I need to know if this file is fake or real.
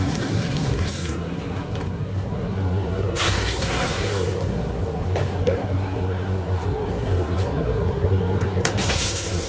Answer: fake